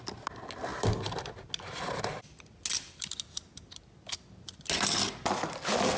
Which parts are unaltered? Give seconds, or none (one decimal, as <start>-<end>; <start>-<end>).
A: 0.0-6.0